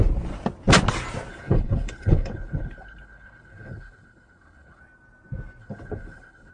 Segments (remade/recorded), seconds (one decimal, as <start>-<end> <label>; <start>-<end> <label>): 0.0-1.3 recorded; 1.3-4.8 remade; 4.8-5.6 recorded; 5.6-6.5 remade